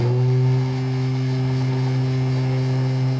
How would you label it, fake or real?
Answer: real